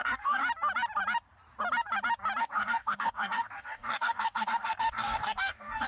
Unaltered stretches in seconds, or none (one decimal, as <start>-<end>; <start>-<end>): 0.4-2.4